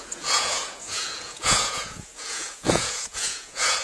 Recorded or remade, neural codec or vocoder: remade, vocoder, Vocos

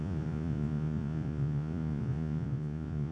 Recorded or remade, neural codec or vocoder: remade, vocoder, Vocos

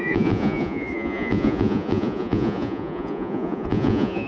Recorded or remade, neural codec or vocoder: remade, vocoder, Vocos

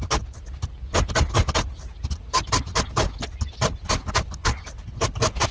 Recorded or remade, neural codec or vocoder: recorded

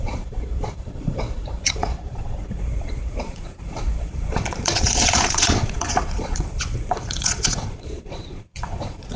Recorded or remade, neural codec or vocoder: remade, vocoder, Vocos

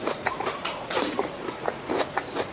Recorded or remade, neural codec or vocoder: remade, vocoder, Vocos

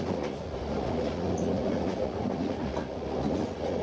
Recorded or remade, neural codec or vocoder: remade, vocoder, Vocos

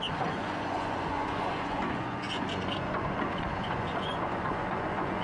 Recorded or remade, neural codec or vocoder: remade, vocoder, Vocos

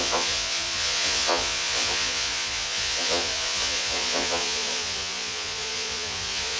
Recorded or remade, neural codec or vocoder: remade, vocoder, Vocos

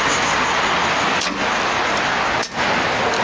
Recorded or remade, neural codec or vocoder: recorded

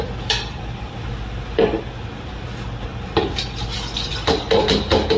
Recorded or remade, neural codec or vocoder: recorded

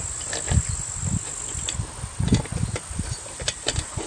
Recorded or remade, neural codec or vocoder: recorded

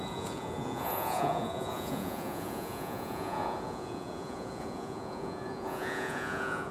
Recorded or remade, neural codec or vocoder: remade, vocoder, Vocos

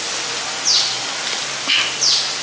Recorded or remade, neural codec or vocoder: recorded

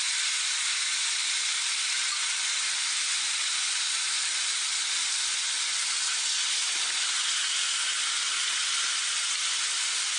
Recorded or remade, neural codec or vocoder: recorded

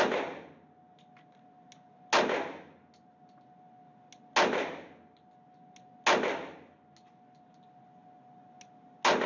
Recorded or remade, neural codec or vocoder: recorded